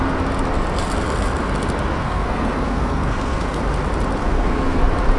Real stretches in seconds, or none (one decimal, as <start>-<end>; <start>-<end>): 0.0-2.0; 3.6-4.2; 4.8-5.2